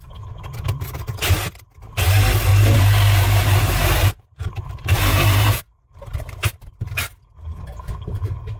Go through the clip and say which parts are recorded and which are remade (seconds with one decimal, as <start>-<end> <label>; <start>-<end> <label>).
0.0-2.5 recorded; 2.5-5.6 remade; 5.6-8.6 recorded